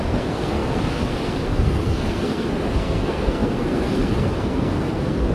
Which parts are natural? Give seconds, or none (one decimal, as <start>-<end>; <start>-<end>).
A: none